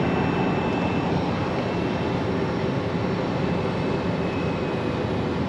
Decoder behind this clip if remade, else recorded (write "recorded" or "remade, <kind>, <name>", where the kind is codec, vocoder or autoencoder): recorded